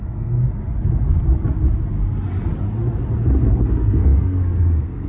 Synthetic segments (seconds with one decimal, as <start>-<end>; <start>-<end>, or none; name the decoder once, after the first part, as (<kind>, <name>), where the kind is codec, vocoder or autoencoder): 0.0-0.4 (codec, SNAC); 3.5-5.1

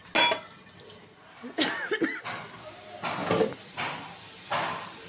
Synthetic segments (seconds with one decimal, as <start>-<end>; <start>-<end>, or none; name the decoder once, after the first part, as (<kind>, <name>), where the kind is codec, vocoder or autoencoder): none

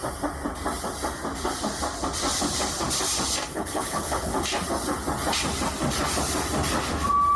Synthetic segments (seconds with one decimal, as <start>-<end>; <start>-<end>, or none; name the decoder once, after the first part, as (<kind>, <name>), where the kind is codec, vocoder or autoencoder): 3.5-4.3 (codec, HILCodec)

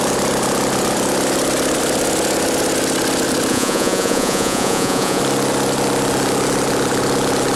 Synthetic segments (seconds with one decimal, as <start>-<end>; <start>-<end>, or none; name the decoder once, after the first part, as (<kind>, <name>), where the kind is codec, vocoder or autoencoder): 3.5-5.2 (vocoder, Vocos)

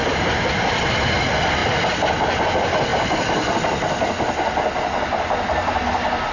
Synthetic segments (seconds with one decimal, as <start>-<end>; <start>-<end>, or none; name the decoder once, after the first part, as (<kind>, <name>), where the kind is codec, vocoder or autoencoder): 0.0-1.2 (vocoder, BigVGAN v2); 1.6-2.5; 2.9-3.6

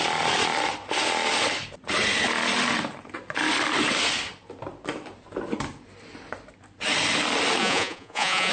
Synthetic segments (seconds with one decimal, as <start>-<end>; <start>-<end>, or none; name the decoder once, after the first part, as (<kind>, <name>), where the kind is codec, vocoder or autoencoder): 7.6-8.5 (vocoder, Vocos)